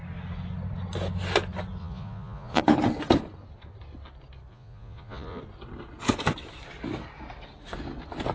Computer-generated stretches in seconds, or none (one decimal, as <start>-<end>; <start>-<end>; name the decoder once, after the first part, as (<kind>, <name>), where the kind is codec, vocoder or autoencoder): 1.8-2.6 (vocoder, Vocos); 4.5-5.4